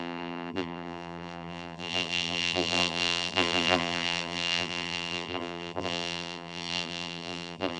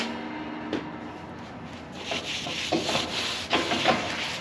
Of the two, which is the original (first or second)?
second